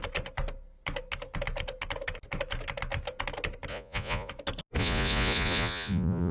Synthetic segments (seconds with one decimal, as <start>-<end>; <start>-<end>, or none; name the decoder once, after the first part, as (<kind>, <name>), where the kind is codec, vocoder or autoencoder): 3.7-4.3 (vocoder, Vocos); 4.8-6.3